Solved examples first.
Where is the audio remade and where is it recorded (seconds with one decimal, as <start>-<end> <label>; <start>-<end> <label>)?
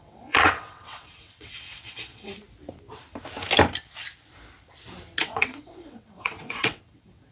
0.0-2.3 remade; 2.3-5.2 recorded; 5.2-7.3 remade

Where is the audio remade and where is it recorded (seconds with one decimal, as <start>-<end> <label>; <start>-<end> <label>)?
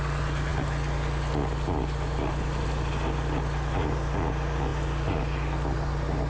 0.0-6.3 recorded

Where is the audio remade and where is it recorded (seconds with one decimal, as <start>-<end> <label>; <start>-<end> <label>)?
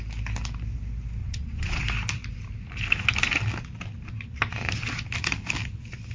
0.0-1.2 recorded; 1.2-1.8 remade; 1.8-6.1 recorded